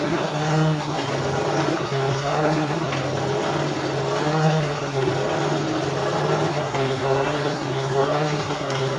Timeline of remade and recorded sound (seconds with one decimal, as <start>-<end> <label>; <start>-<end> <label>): 0.0-1.1 remade; 1.1-1.7 recorded; 1.7-2.9 remade; 2.9-4.2 recorded; 4.2-5.1 remade; 5.1-6.5 recorded; 6.5-9.0 remade